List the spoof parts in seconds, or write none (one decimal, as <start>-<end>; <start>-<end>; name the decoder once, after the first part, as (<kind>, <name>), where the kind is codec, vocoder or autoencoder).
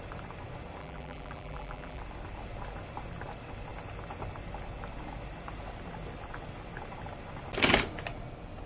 0.8-2.0 (vocoder, BigVGAN v2)